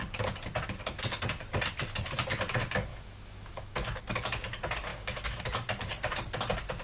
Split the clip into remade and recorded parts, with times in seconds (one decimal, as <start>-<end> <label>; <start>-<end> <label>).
0.0-2.9 recorded; 2.9-4.0 remade; 4.0-4.9 recorded; 4.9-5.4 remade; 5.4-6.8 recorded